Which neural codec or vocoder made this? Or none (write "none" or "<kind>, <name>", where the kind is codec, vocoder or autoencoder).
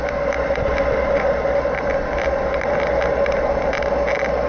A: none